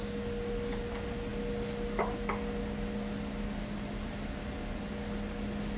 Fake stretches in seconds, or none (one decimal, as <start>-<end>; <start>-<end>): none